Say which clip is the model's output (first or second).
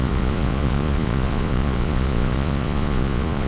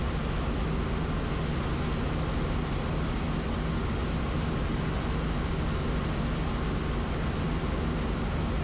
first